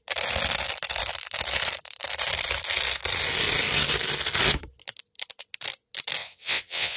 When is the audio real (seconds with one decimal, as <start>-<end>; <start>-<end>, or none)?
0.0-6.2